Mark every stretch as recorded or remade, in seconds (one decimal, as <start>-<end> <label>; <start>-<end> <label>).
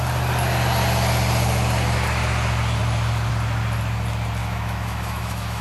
0.0-4.4 recorded; 4.4-5.6 remade